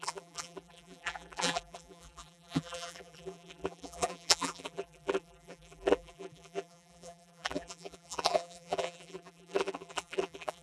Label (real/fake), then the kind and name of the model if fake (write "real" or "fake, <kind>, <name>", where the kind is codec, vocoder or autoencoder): fake, vocoder, BigVGAN v2